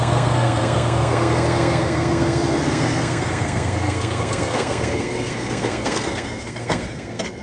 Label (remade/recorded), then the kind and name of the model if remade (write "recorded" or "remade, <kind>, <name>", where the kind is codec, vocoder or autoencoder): remade, codec, SNAC